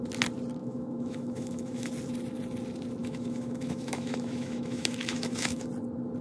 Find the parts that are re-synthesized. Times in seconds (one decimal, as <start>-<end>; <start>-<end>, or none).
0.6-1.9; 3.0-5.7